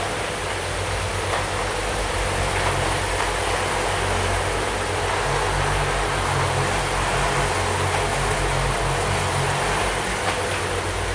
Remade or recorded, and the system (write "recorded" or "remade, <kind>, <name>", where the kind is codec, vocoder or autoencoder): recorded